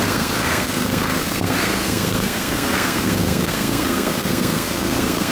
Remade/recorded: remade